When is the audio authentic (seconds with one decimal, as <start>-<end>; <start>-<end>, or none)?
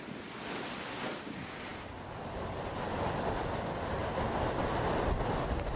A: 0.0-4.0; 4.6-5.8